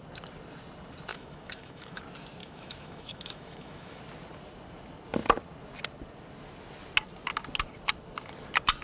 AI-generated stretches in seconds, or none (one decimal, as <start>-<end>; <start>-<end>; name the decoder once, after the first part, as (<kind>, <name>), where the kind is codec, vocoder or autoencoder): 1.1-2.0 (autoencoder, DAC-VAE); 2.4-4.0